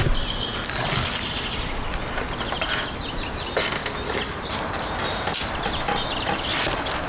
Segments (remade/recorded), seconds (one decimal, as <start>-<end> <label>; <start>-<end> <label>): 0.0-7.1 recorded